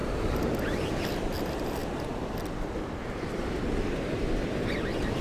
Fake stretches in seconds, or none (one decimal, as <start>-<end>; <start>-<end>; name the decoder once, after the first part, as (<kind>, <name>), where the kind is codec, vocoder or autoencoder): 0.0-0.9 (vocoder, BigVGAN v2)